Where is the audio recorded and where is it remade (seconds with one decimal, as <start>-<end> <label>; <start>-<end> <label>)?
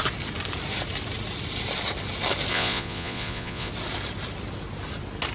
0.0-2.5 recorded; 2.5-3.7 remade; 3.7-5.3 recorded